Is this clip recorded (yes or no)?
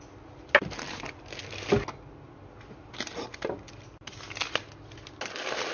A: yes